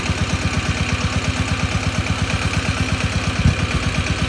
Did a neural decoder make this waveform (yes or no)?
no